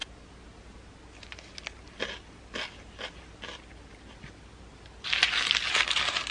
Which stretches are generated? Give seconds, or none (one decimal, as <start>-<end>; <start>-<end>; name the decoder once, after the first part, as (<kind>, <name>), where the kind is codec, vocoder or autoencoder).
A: 3.8-4.7 (vocoder, BigVGAN v2)